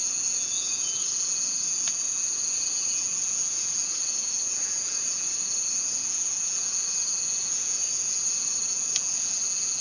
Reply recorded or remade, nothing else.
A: remade